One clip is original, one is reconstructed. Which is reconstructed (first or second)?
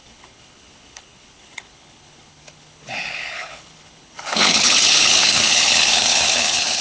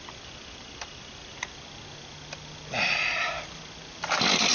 first